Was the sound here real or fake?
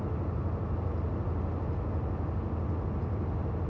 real